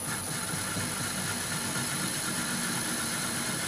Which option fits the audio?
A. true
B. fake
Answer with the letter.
A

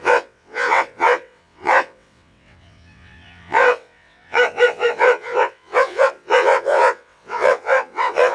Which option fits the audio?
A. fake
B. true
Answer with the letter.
A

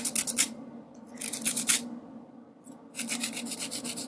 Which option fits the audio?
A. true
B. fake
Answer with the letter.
A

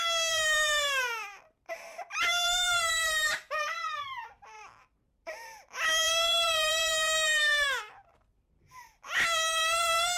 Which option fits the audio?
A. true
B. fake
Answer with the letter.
B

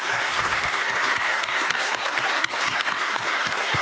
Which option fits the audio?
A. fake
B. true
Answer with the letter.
A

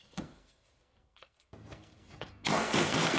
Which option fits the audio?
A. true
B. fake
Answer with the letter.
B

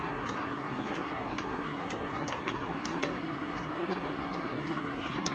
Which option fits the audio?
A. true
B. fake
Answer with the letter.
B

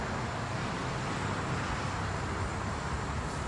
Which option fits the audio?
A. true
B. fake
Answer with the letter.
A